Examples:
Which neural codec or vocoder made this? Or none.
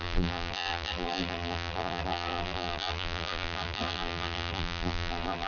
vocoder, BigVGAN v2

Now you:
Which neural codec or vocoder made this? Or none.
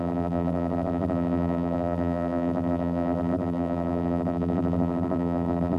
vocoder, BigVGAN v2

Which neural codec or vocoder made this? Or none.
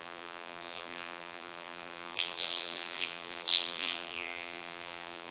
vocoder, BigVGAN v2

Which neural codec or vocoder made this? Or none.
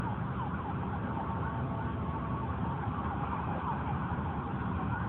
vocoder, BigVGAN v2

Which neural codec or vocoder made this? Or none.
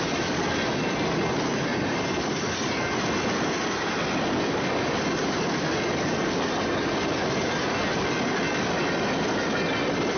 none